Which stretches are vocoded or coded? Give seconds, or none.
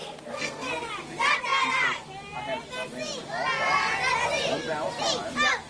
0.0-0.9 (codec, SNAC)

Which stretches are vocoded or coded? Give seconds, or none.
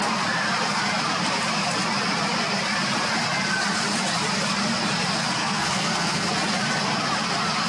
5.4-6.3 (codec, SNAC)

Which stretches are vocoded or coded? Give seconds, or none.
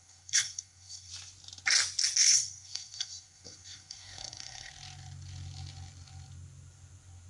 0.0-1.1 (codec, SNAC); 2.2-4.7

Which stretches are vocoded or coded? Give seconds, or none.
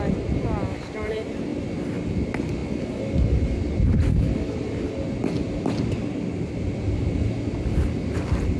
none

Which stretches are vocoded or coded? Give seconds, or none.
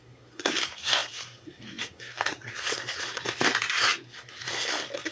0.0-5.1 (codec, SNAC)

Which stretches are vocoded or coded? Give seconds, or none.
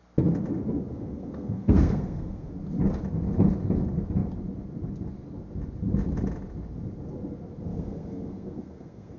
0.9-2.5 (codec, SNAC); 7.7-9.2